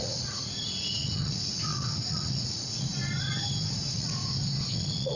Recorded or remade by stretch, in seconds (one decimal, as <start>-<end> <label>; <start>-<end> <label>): 0.0-2.9 remade; 2.9-3.7 recorded; 3.7-4.2 remade; 4.2-4.7 recorded; 4.7-5.2 remade